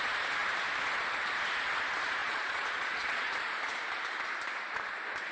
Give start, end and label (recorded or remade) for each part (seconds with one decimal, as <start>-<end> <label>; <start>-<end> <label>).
0.0-2.2 recorded; 2.2-3.3 remade; 3.3-5.3 recorded